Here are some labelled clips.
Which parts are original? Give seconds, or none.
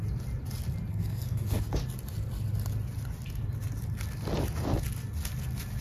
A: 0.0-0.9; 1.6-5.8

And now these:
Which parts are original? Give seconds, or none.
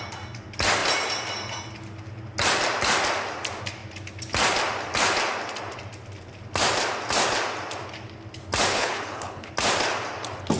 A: 0.0-8.7; 9.5-10.6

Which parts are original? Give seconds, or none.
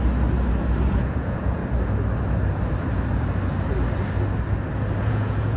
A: 0.0-0.9; 1.6-5.0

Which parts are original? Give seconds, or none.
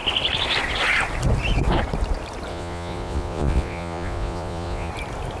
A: 0.0-2.5; 4.9-5.4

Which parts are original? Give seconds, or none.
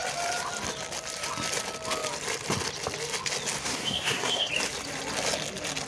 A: 0.0-3.6; 4.5-5.9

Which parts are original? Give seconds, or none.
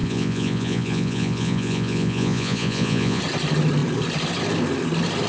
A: 3.2-5.3